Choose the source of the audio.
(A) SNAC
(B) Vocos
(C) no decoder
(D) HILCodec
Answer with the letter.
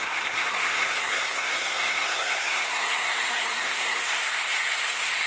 A